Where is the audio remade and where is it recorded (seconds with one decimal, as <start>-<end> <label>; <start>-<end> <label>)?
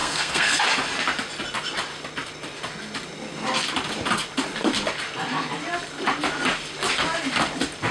0.0-0.6 remade; 0.6-7.9 recorded